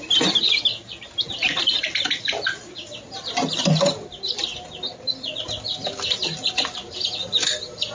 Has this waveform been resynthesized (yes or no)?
no